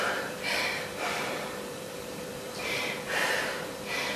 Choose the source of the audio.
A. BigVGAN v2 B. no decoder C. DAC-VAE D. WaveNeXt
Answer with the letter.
A